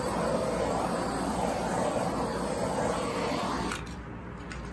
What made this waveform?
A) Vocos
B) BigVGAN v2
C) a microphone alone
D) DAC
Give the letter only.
C